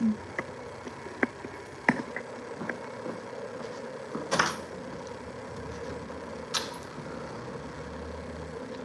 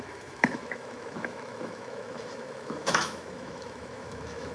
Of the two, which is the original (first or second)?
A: first